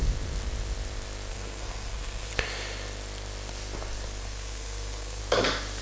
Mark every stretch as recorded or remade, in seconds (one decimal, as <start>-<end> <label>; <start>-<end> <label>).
0.0-1.3 recorded; 1.3-2.3 remade; 2.3-4.2 recorded; 4.2-5.2 remade; 5.2-5.8 recorded